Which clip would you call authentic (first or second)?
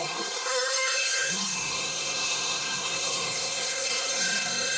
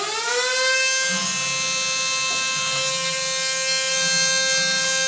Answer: second